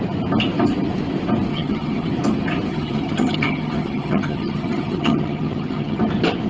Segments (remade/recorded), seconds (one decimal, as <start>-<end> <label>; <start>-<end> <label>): 0.0-1.5 recorded; 1.5-2.1 remade; 2.1-2.7 recorded; 2.7-6.0 remade; 6.0-6.5 recorded